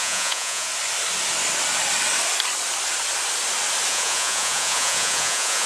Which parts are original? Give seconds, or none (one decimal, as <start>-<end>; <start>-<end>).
0.7-3.9